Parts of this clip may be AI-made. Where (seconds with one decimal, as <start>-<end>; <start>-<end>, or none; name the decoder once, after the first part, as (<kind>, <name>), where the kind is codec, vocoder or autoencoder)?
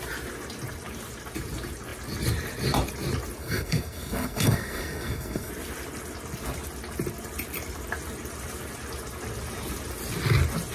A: 3.4-5.5 (codec, SNAC)